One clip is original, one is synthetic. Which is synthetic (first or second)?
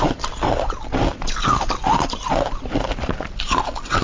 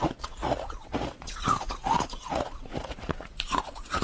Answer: second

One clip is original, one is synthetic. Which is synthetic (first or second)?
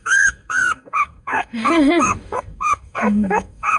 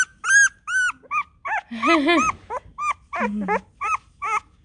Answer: first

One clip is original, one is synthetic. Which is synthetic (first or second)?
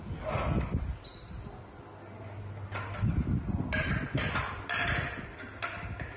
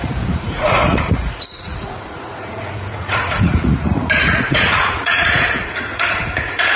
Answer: second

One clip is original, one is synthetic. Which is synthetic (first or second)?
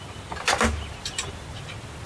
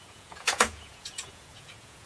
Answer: second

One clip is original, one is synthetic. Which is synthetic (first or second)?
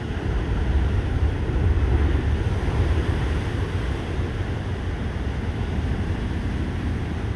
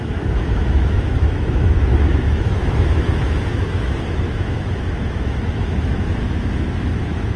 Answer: second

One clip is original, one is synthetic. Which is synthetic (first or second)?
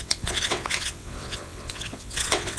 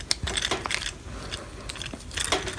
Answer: first